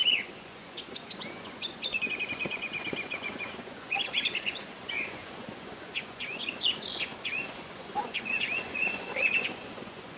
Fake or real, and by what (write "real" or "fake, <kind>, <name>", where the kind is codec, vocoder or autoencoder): fake, vocoder, Vocos